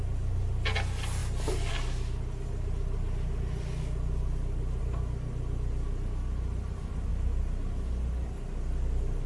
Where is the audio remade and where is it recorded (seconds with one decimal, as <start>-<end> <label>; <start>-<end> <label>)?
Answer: 0.0-9.3 recorded